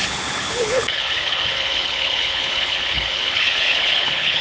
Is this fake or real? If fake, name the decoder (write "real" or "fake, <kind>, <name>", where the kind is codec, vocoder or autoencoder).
fake, codec, HILCodec